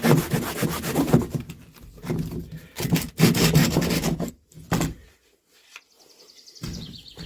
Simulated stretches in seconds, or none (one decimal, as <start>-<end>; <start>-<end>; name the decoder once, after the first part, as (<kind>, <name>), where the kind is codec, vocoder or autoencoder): 3.6-4.3 (codec, DAC)